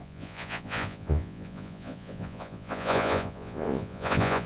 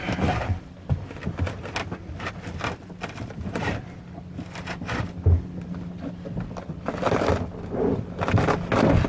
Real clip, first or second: second